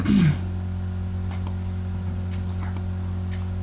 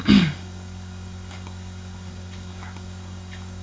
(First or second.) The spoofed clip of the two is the second